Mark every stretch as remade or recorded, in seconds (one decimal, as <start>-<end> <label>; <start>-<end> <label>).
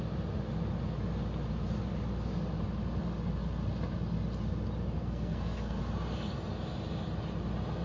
0.0-5.0 recorded; 5.0-5.8 remade; 5.8-7.8 recorded